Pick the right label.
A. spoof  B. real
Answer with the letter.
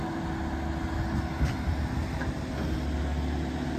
B